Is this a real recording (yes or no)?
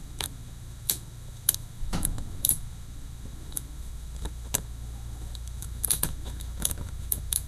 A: no